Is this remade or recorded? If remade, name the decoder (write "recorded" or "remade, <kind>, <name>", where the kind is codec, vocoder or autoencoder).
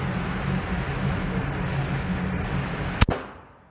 recorded